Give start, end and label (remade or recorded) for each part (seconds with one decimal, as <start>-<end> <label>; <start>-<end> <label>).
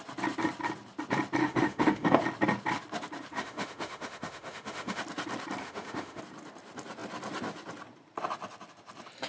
0.0-1.4 recorded; 1.4-2.2 remade; 2.2-3.3 recorded; 3.3-5.0 remade; 5.0-5.6 recorded; 5.6-6.2 remade; 6.2-9.3 recorded